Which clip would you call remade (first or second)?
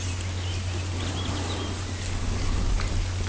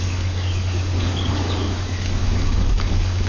second